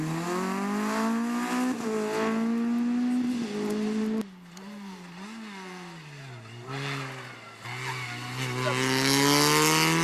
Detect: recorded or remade recorded